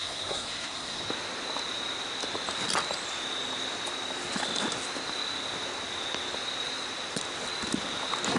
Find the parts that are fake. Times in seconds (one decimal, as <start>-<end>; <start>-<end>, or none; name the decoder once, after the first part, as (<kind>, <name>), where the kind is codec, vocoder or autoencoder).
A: 0.0-1.0 (codec, SNAC)